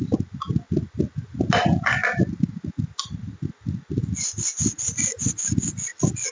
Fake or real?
real